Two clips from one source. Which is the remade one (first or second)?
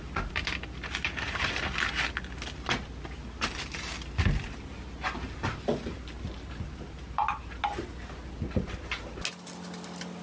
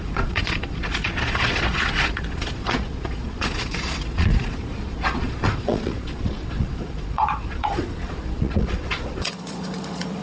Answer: second